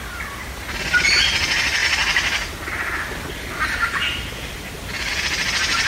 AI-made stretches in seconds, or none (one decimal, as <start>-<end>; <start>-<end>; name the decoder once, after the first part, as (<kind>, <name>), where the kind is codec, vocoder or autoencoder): none